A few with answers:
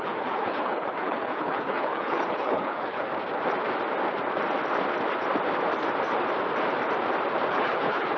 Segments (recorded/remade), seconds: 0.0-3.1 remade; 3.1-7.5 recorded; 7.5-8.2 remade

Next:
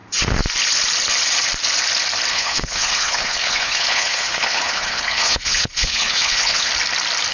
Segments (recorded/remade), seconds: 0.0-2.3 recorded; 2.3-6.7 remade; 6.7-7.3 recorded

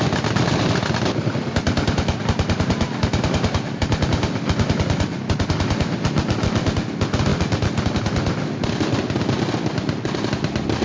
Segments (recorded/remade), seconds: 0.0-10.8 recorded

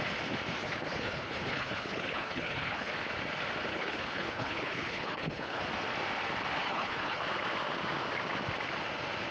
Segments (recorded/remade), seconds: 0.0-0.6 recorded; 0.6-2.9 remade; 2.9-3.7 recorded; 3.7-5.6 remade; 5.6-6.6 recorded; 6.6-7.2 remade; 7.2-9.3 recorded

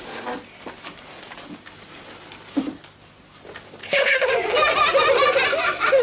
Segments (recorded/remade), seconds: 0.0-3.8 recorded; 3.8-4.3 remade; 4.3-6.0 recorded